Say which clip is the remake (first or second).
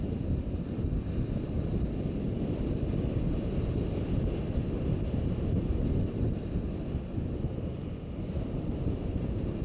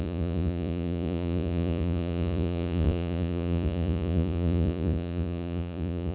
second